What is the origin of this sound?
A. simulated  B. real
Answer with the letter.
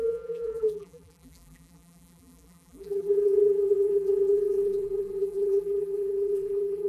A